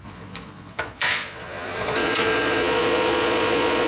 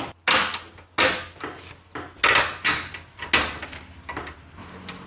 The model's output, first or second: first